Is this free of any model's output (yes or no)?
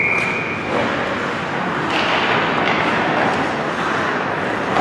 yes